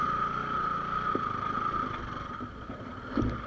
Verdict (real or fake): real